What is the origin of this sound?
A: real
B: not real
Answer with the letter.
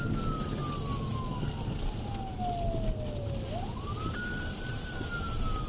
A